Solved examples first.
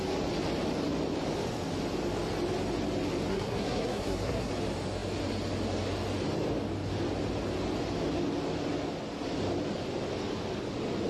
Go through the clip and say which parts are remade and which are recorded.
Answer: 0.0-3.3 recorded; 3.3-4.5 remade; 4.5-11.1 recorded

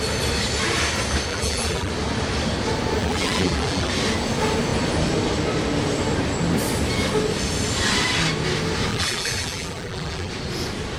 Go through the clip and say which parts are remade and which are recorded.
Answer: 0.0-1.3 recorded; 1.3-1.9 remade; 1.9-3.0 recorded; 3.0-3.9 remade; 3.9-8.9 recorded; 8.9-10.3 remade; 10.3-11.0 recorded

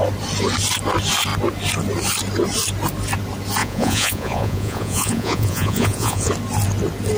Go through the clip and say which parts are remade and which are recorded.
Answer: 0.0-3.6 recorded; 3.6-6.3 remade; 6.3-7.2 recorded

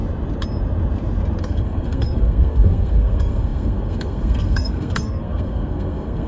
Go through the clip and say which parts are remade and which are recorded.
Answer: 0.0-1.4 recorded; 1.4-6.3 remade